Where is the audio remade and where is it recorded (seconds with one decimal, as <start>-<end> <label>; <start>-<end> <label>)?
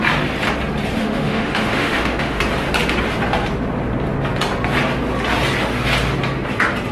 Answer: 0.0-1.0 recorded; 1.0-2.4 remade; 2.4-6.9 recorded